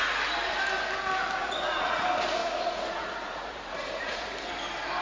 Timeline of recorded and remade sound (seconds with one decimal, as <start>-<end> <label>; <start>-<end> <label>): 0.0-1.4 recorded; 1.4-2.0 remade; 2.0-2.4 recorded; 2.4-4.2 remade; 4.2-5.0 recorded